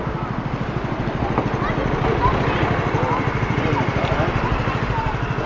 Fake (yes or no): no